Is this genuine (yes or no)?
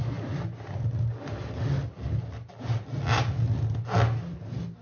yes